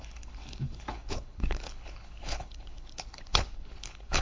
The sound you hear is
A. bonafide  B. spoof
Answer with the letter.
B